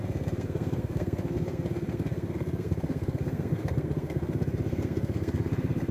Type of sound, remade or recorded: remade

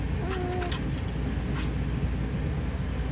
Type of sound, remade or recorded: recorded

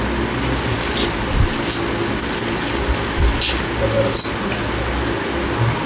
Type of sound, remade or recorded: recorded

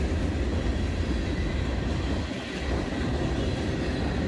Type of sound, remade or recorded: recorded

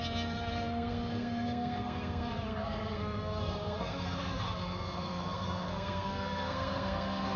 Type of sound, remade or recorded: remade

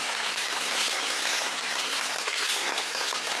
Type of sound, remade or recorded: remade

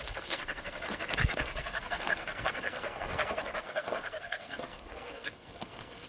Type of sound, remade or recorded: remade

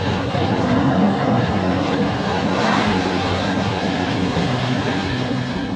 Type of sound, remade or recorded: remade